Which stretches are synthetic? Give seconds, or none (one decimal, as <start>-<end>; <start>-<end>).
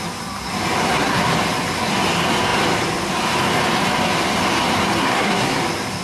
0.8-1.3; 5.0-5.6